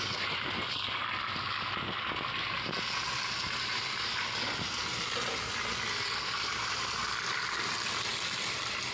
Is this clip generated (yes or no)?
no